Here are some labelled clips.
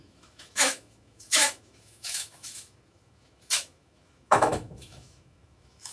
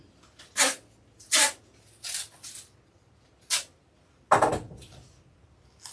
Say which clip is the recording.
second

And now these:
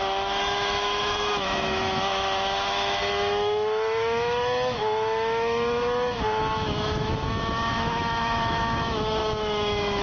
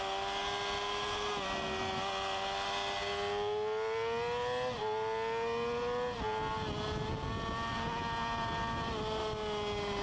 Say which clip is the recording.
second